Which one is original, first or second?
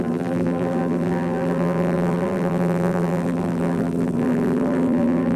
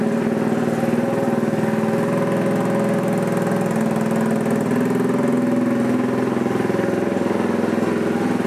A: second